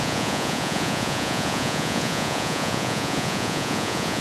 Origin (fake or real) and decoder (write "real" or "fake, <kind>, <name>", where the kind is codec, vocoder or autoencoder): fake, vocoder, Vocos